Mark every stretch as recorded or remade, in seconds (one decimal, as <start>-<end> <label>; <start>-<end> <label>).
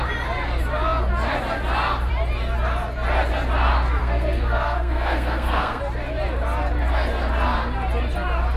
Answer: 0.0-4.0 recorded; 4.0-5.8 remade; 5.8-8.6 recorded